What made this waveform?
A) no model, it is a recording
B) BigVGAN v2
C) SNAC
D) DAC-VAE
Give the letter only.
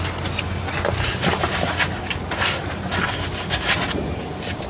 A